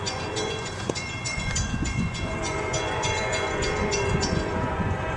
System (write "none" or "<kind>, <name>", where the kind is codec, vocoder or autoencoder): vocoder, Vocos